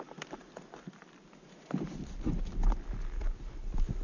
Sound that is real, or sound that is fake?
fake